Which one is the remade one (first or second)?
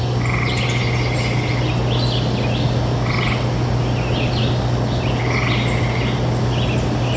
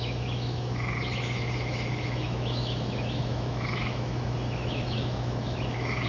second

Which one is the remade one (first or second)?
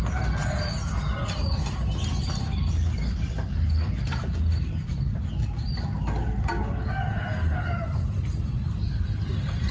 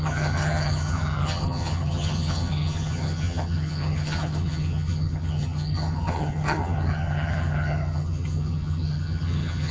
second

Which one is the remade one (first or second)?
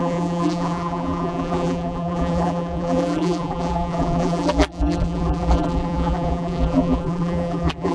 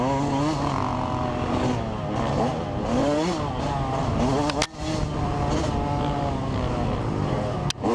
first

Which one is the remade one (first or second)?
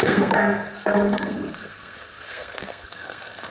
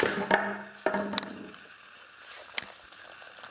first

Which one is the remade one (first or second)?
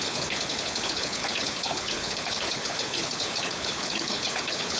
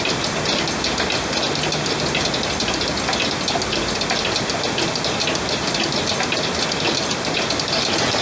first